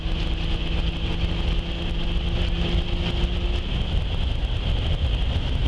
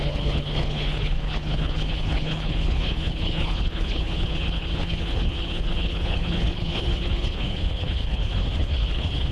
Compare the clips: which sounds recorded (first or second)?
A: first